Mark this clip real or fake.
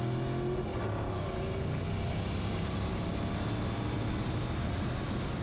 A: real